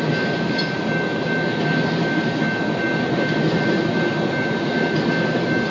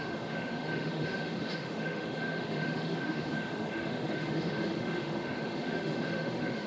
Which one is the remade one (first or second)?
second